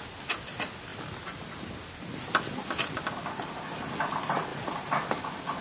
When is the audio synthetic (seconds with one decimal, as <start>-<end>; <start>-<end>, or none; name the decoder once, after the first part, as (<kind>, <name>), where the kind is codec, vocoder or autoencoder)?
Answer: 0.9-1.7 (vocoder, BigVGAN v2); 4.5-5.1